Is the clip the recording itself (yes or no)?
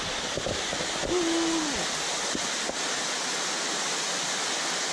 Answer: yes